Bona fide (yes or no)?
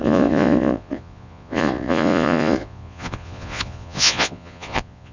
no